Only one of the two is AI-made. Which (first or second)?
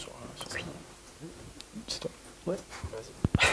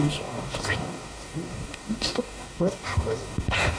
second